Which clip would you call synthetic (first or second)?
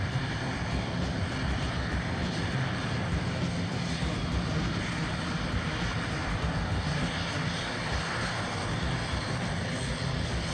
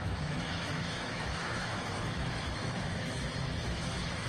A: second